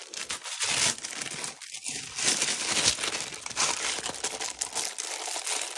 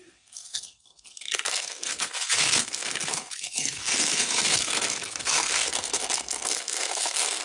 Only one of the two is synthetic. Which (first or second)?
second